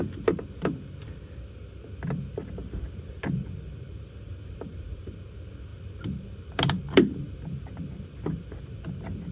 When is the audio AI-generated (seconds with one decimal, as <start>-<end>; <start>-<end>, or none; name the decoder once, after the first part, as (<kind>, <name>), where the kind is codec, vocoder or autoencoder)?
0.0-1.2 (vocoder, BigVGAN v2); 2.6-5.3; 5.7-8.9